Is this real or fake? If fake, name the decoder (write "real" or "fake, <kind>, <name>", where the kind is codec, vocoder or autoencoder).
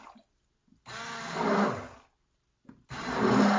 real